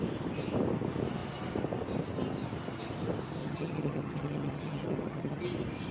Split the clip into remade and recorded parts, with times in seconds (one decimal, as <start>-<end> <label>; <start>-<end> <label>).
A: 0.0-3.4 recorded; 3.4-5.4 remade; 5.4-5.9 recorded